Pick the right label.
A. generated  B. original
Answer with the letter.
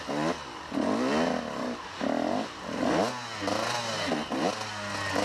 B